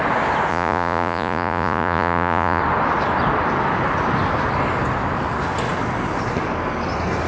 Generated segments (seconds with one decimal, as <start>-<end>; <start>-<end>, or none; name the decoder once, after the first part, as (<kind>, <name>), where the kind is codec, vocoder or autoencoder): 0.5-2.6 (vocoder, Vocos)

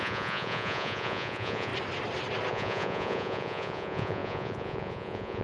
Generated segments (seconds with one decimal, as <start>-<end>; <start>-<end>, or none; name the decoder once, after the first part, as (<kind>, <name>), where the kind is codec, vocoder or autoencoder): 0.0-1.7 (vocoder, Vocos); 2.5-5.4

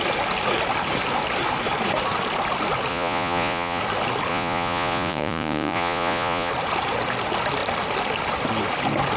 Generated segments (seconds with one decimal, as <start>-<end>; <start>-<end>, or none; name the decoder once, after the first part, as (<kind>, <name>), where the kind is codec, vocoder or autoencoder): 2.9-3.8 (vocoder, Vocos); 4.3-6.5

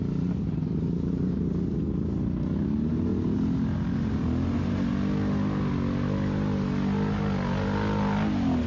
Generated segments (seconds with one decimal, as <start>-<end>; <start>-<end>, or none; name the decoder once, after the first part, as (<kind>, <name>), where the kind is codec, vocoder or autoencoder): none

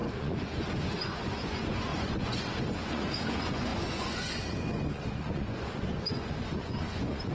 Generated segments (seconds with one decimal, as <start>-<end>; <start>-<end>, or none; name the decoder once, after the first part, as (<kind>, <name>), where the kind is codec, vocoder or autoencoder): 0.0-7.3 (vocoder, Vocos)